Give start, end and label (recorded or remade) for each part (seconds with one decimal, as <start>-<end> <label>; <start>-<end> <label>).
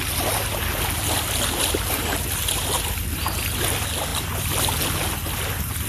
0.0-4.1 recorded; 4.1-4.8 remade; 4.8-5.9 recorded